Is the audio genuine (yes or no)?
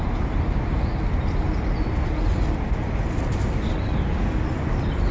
yes